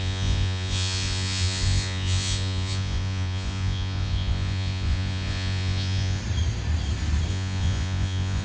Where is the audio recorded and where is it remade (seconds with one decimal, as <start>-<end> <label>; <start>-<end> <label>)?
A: 0.0-6.2 remade; 6.2-7.3 recorded; 7.3-8.4 remade